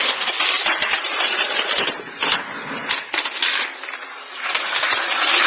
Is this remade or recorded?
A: recorded